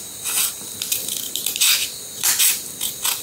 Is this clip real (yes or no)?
yes